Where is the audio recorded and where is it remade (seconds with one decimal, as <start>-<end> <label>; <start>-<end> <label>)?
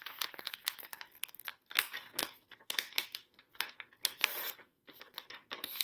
0.0-5.8 remade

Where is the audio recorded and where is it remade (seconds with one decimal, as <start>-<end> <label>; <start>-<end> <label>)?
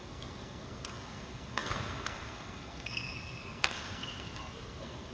0.0-5.1 remade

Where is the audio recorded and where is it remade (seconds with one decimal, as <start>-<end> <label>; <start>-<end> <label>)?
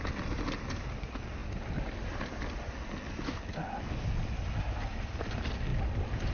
0.0-6.3 recorded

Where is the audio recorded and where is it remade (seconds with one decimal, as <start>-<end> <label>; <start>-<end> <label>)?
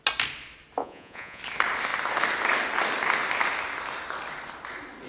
0.0-0.8 recorded; 0.8-1.4 remade; 1.4-5.1 recorded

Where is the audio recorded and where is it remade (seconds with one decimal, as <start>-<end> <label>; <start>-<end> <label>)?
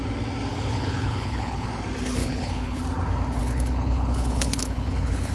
0.0-0.5 recorded; 0.5-1.7 remade; 1.7-2.2 recorded; 2.2-2.8 remade; 2.8-3.4 recorded; 3.4-5.3 remade